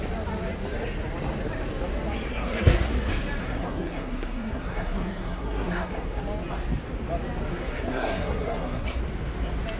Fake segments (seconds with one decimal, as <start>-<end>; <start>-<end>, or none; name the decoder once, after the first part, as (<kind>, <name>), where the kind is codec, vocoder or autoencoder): 2.3-2.9 (codec, SNAC); 3.4-6.2; 7.5-9.0